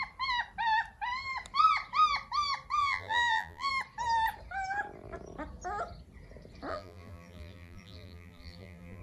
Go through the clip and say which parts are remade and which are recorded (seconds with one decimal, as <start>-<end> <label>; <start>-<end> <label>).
0.0-2.8 recorded; 2.8-3.7 remade; 3.7-6.7 recorded; 6.7-9.0 remade

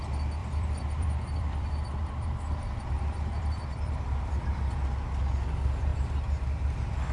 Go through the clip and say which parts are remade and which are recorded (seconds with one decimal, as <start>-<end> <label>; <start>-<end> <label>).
0.0-0.4 recorded; 0.4-4.6 remade; 4.6-5.9 recorded; 5.9-7.1 remade

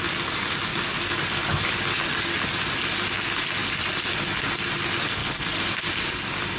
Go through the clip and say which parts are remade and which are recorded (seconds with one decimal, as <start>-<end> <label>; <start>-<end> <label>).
0.0-0.7 recorded; 0.7-1.7 remade; 1.7-3.6 recorded; 3.6-4.3 remade; 4.3-5.2 recorded; 5.2-6.6 remade

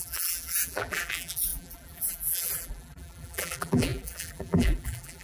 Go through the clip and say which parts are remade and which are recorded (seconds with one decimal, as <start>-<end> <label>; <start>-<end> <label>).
0.0-5.2 remade